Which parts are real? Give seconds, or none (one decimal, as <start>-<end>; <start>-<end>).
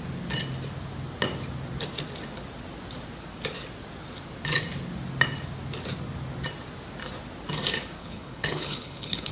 0.0-8.0